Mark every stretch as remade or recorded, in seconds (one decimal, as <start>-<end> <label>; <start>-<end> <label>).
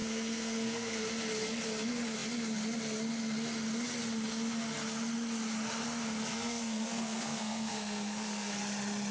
0.0-1.0 remade; 1.0-6.3 recorded; 6.3-8.6 remade; 8.6-9.1 recorded